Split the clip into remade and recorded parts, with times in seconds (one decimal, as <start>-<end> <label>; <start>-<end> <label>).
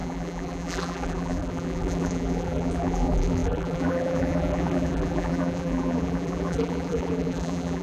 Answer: 0.0-7.8 remade